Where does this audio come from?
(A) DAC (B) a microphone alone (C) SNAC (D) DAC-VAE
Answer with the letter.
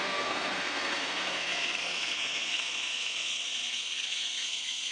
C